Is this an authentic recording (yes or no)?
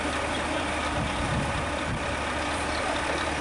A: no